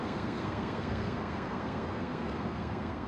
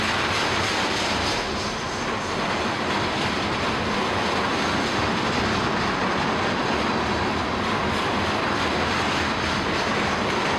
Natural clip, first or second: second